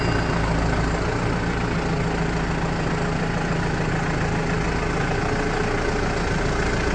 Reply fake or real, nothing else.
real